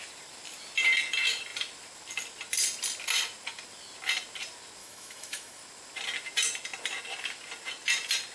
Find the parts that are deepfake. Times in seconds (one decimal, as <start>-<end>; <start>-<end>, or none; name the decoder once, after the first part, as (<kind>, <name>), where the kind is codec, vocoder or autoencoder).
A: 4.8-5.6 (autoencoder, DAC-VAE)